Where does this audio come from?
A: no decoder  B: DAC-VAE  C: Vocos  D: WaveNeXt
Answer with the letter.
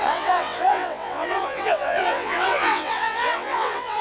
D